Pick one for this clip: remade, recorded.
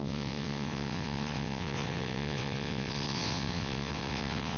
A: remade